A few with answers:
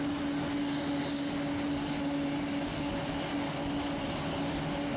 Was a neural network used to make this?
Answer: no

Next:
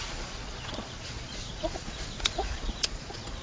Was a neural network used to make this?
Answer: yes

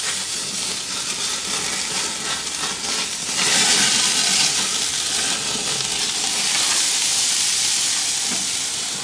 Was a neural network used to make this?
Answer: no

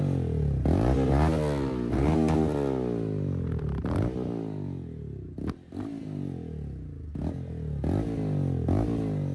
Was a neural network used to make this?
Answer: no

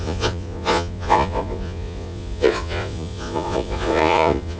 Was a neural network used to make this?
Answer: yes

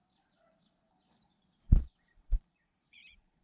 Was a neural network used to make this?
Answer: yes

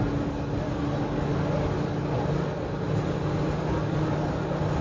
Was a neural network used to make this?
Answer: no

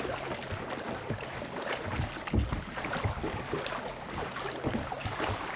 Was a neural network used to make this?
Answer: no